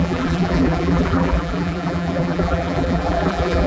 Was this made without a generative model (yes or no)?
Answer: no